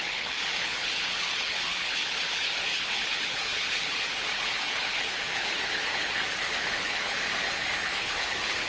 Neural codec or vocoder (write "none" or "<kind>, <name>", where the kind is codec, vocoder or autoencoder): codec, HILCodec